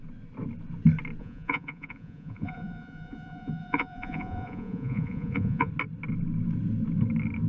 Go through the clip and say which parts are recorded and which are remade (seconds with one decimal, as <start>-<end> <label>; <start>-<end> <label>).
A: 0.0-1.2 recorded; 1.2-5.7 remade; 5.7-7.5 recorded